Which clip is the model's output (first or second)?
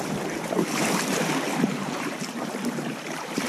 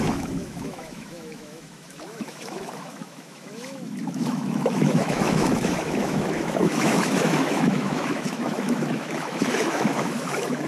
second